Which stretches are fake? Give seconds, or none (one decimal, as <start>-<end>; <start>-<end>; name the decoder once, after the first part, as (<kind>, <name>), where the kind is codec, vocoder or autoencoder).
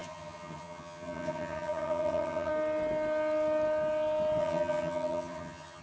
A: 0.0-2.5 (vocoder, HiFi-GAN); 4.4-5.8